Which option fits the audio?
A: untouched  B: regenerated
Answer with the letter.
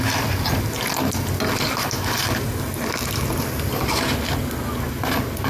A